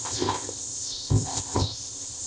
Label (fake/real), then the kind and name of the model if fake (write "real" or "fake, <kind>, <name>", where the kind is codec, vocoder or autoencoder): fake, codec, ZipCodec